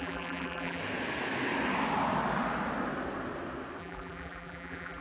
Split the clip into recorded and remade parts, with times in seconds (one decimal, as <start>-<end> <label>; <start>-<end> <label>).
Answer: 0.0-0.8 remade; 0.8-3.8 recorded; 3.8-5.0 remade